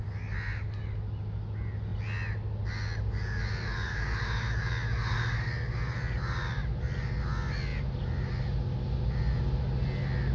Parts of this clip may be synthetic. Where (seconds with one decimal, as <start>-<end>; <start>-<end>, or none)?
none